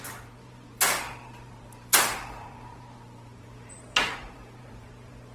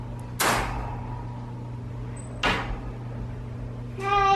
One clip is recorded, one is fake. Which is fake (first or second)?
first